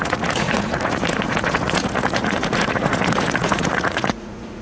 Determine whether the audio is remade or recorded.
remade